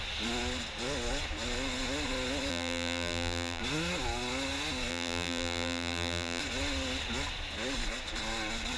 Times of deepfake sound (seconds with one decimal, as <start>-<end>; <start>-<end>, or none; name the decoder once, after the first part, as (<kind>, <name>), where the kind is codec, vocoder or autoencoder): 2.5-3.6 (vocoder, BigVGAN v2); 4.9-6.4